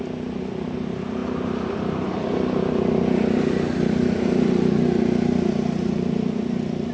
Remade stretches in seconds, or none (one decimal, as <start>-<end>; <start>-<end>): none